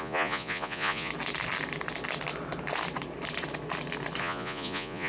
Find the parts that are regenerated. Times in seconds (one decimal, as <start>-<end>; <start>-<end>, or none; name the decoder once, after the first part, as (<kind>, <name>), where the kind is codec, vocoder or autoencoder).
0.0-1.1 (vocoder, Vocos); 4.2-5.1

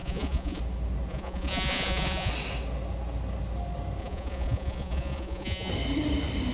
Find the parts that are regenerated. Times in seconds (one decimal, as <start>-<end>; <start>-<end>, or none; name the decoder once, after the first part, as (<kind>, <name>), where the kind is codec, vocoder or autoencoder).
0.0-0.6 (vocoder, Vocos); 1.1-2.3; 4.0-5.7

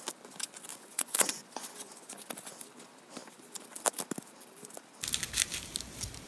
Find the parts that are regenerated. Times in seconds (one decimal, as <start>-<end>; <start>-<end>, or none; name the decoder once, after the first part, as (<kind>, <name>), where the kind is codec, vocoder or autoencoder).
0.7-2.3 (vocoder, Vocos)

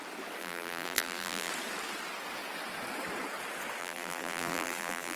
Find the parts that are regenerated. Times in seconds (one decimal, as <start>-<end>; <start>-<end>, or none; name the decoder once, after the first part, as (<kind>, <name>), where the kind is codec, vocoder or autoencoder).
0.4-1.5 (vocoder, BigVGAN v2); 3.8-5.2

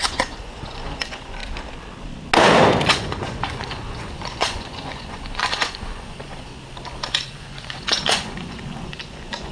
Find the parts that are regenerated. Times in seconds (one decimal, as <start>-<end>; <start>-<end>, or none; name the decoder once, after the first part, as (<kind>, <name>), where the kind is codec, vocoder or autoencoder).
0.0-1.4 (vocoder, Vocos); 2.9-6.5; 7.1-9.5

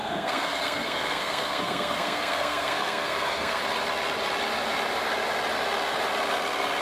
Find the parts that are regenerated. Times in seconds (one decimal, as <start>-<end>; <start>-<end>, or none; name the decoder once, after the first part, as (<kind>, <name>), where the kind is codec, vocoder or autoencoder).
0.0-3.6 (codec, SNAC)